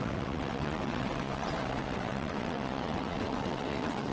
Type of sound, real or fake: fake